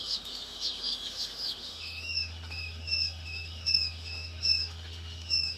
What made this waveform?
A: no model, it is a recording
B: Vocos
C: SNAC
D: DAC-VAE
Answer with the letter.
D